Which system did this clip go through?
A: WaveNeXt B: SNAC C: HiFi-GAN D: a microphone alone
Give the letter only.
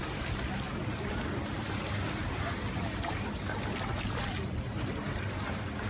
D